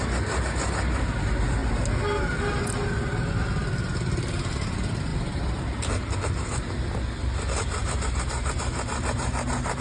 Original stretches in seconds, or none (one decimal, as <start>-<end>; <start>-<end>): 0.0-9.8